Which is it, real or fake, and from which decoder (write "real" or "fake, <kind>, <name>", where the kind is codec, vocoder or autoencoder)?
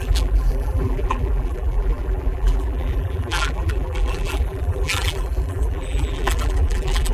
fake, vocoder, BigVGAN v2